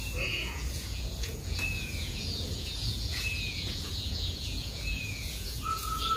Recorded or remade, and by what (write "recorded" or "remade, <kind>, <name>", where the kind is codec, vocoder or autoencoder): remade, vocoder, Vocos